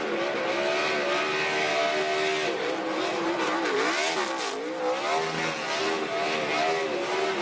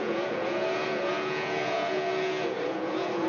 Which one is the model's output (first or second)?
second